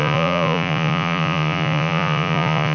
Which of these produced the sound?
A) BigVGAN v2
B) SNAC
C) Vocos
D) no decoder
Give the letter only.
C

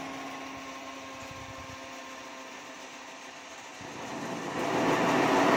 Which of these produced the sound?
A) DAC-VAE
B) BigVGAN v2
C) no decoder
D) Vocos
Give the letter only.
C